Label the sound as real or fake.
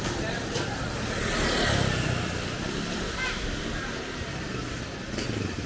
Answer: real